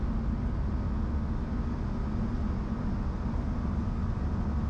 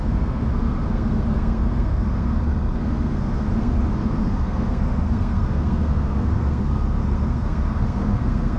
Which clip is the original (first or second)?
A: first